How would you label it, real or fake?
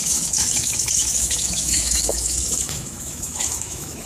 fake